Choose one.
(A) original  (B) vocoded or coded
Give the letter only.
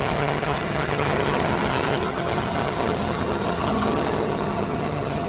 B